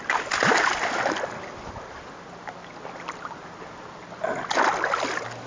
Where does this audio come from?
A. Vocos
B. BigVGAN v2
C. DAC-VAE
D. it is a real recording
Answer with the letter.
D